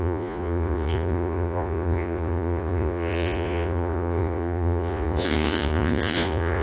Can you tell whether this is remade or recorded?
remade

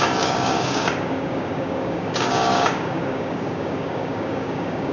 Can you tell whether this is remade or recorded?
remade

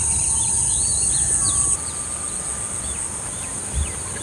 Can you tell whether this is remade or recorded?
recorded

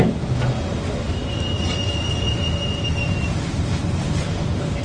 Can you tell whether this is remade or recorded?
recorded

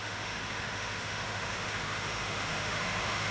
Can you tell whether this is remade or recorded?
remade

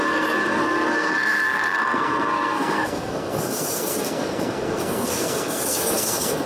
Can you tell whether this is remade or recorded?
remade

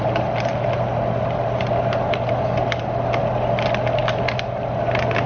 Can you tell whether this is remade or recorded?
recorded